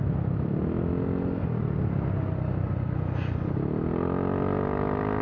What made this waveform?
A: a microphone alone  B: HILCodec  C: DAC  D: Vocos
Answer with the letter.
A